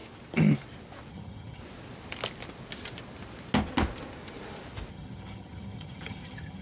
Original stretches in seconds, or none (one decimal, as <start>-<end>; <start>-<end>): 0.0-1.1; 1.6-4.9